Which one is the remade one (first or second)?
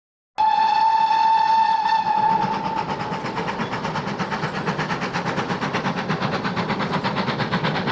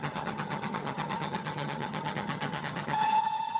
second